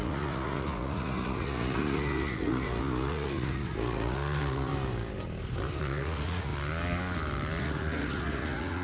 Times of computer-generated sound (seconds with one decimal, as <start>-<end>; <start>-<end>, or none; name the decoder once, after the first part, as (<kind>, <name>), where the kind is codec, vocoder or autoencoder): 0.0-4.7 (vocoder, Vocos); 5.8-6.5; 7.6-8.8